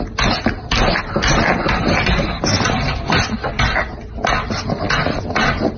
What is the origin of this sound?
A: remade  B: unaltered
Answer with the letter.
B